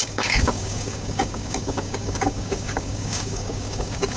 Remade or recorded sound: remade